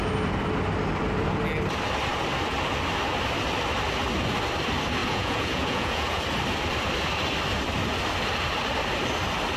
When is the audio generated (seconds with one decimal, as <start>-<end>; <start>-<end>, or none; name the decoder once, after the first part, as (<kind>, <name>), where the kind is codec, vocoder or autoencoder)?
5.0-6.2 (vocoder, Vocos)